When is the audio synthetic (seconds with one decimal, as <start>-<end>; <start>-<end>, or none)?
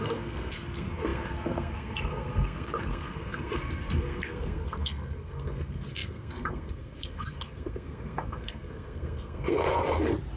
0.0-9.6